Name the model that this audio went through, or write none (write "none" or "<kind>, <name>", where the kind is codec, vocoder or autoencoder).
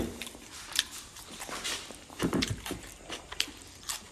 vocoder, BigVGAN v2